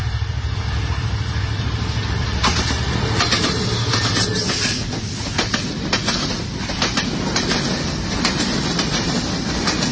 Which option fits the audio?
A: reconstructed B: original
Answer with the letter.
B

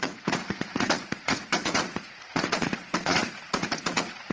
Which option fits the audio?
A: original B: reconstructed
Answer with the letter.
B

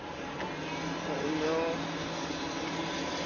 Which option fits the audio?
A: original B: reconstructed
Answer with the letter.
A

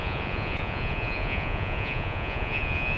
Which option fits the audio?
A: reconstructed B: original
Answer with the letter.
A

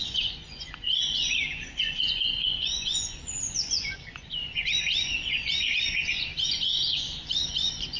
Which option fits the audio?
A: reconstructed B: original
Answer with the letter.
A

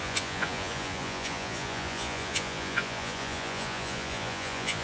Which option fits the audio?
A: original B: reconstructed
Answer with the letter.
B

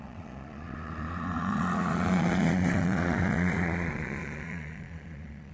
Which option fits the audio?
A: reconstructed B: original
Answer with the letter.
A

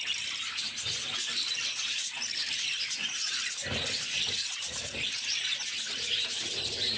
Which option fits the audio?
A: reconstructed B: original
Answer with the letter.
B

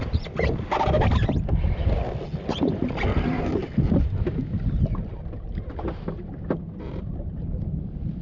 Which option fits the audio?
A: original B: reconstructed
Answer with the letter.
A